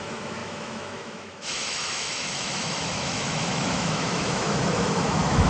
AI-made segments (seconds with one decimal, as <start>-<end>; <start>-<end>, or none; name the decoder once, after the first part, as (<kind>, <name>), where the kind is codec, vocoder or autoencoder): 0.0-5.5 (autoencoder, DAC-VAE)